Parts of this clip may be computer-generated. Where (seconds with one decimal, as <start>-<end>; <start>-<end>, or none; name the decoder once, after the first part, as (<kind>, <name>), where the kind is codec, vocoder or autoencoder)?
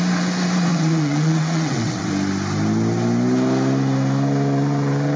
0.7-2.1 (vocoder, WaveNeXt)